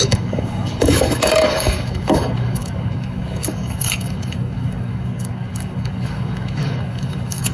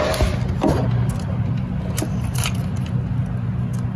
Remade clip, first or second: first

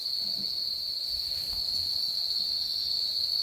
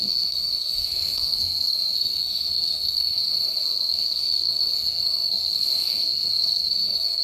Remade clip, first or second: second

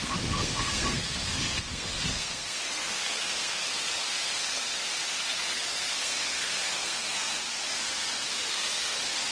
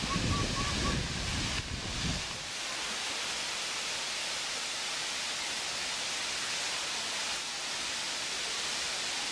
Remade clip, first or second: first